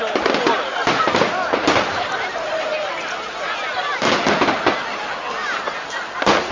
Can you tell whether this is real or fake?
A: real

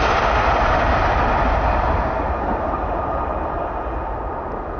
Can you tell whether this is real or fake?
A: real